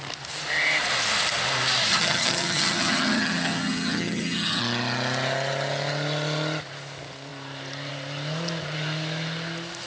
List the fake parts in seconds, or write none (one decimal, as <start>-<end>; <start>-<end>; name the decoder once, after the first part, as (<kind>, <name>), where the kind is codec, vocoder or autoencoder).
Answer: 1.9-4.6 (vocoder, HiFi-GAN)